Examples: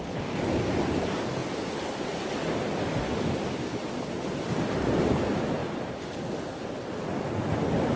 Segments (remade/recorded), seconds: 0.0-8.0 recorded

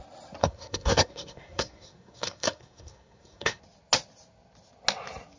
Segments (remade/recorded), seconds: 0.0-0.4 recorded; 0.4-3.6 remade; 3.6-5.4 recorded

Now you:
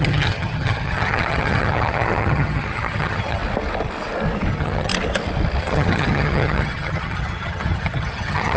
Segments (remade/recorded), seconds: 0.0-3.4 remade; 3.4-4.5 recorded; 4.5-4.9 remade; 4.9-5.6 recorded; 5.6-8.6 remade

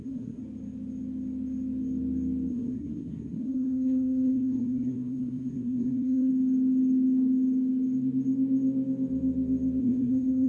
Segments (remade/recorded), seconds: 0.0-0.4 remade; 0.4-2.5 recorded; 2.5-6.3 remade; 6.3-9.8 recorded; 9.8-10.5 remade

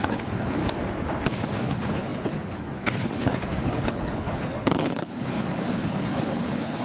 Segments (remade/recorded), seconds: 0.0-0.6 remade; 0.6-1.6 recorded; 1.6-6.8 remade